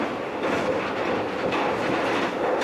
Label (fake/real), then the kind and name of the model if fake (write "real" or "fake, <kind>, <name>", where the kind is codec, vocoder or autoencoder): real